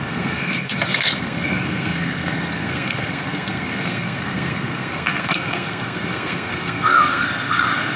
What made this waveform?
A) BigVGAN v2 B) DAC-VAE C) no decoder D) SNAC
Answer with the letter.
D